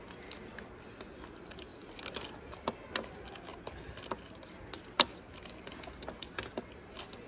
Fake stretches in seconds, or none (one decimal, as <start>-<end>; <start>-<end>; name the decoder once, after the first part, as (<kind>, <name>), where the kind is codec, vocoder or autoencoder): none